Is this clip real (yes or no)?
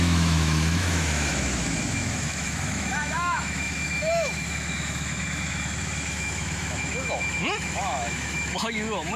no